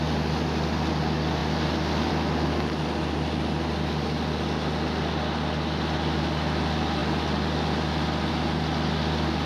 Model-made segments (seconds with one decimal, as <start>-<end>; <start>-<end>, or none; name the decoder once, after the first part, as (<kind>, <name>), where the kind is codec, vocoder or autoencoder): none

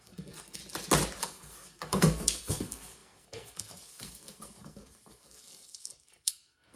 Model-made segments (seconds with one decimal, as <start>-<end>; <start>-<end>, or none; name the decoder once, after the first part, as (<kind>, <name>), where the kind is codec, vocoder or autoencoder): 0.0-0.6 (codec, SNAC); 1.2-6.8